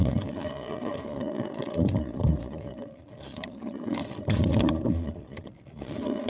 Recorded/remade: remade